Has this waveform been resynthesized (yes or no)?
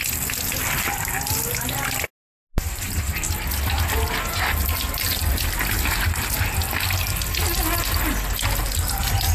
no